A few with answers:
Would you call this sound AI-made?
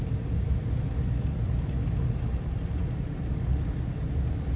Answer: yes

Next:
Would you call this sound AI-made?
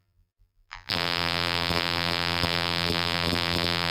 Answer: yes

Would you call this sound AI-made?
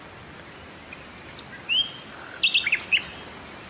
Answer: no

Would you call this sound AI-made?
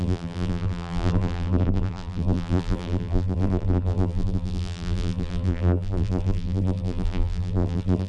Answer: yes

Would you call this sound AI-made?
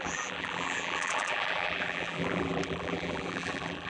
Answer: yes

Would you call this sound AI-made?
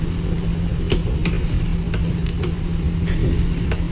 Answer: no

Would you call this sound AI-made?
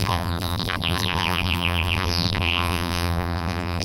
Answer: yes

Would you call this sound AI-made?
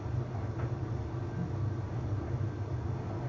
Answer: no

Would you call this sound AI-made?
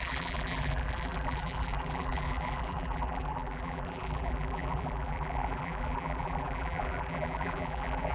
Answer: yes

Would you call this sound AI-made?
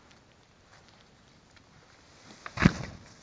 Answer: no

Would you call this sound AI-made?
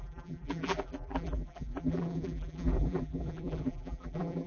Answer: yes